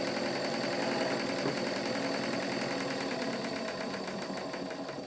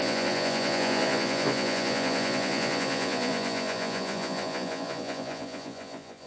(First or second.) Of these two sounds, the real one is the first